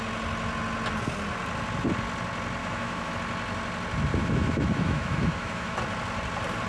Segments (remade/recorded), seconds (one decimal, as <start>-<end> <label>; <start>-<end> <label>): 0.0-2.6 recorded; 2.6-3.1 remade; 3.1-4.2 recorded; 4.2-5.8 remade; 5.8-6.7 recorded